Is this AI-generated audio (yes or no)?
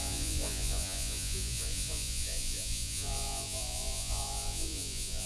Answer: yes